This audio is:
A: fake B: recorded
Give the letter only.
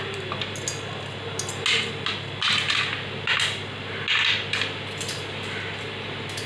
B